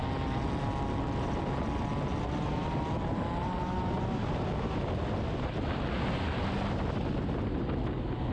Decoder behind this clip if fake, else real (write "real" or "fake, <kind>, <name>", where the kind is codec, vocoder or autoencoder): real